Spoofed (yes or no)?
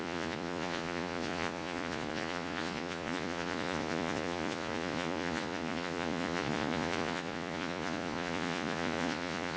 yes